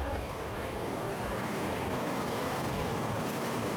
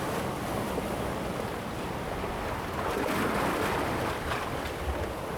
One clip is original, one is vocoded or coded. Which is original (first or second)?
second